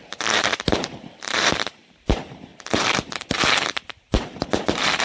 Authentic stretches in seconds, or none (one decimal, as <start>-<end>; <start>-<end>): 0.0-5.0